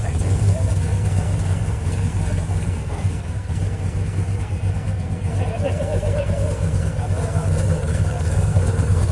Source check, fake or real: fake